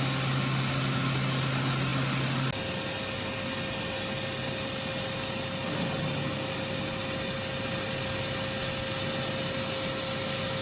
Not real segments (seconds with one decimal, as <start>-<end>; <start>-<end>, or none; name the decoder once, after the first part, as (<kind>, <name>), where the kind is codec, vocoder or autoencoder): none